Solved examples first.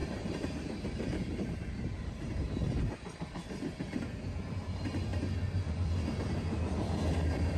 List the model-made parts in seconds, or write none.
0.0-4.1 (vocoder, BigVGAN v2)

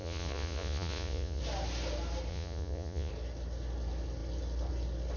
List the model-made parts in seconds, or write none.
0.0-1.4 (vocoder, Vocos); 2.3-3.1

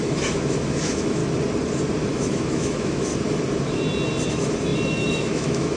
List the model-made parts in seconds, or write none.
0.0-1.2 (autoencoder, DAC-VAE); 2.1-3.1; 4.3-5.8